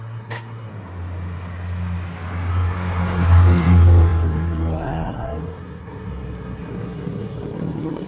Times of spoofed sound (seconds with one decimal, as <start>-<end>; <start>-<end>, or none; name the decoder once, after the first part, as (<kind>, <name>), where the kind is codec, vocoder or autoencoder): 0.0-0.7 (codec, SNAC); 2.5-8.1